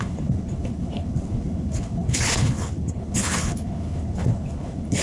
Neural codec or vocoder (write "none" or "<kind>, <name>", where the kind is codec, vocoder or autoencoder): codec, HILCodec